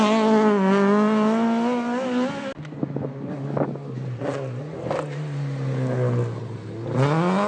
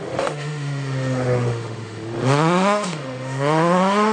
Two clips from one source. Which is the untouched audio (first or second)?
first